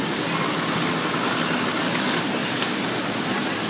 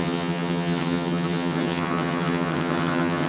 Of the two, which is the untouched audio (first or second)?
first